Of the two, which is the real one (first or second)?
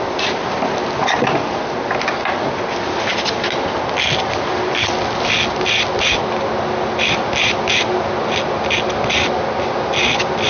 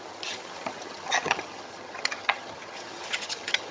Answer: first